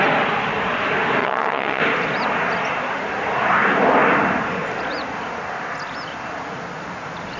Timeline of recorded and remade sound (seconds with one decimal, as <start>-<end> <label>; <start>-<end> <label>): 0.0-1.2 recorded; 1.2-1.8 remade; 1.8-7.4 recorded